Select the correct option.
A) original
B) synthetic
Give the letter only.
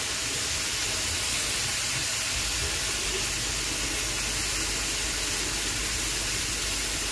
A